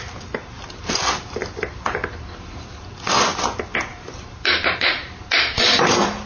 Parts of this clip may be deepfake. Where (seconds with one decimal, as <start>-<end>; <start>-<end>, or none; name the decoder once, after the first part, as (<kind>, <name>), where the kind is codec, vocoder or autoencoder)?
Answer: 3.9-6.3 (vocoder, BigVGAN v2)